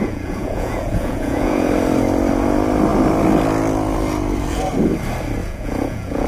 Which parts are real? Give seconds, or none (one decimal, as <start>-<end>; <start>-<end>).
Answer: 1.7-5.4